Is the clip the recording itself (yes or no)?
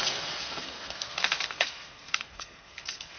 no